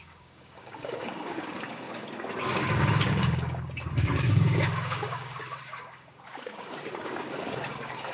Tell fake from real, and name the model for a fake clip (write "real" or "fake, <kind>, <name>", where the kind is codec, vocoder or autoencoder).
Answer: fake, codec, DAC